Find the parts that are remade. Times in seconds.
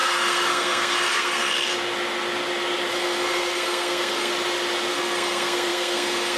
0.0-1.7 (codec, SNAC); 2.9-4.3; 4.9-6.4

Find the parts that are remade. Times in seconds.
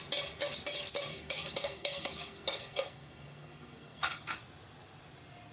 1.1-4.4 (codec, SNAC)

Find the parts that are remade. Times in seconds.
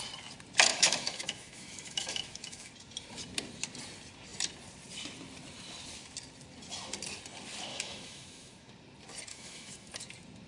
0.7-2.7 (autoencoder, DAC-VAE); 7.7-8.7; 9.3-9.9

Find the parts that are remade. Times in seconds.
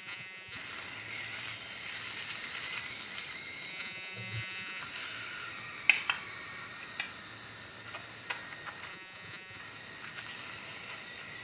0.0-0.6 (vocoder, Vocos); 3.7-4.8; 8.9-9.6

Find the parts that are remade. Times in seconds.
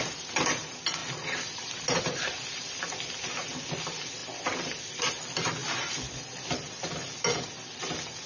none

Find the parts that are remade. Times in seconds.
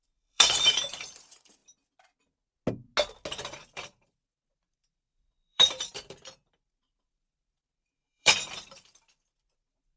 0.0-1.6 (vocoder, BigVGAN v2); 3.4-10.0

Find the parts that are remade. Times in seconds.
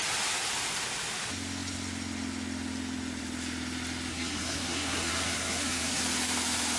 4.1-6.0 (codec, SNAC)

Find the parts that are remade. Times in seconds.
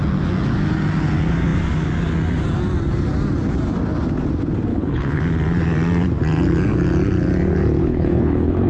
4.7-5.2 (codec, HILCodec); 7.8-8.7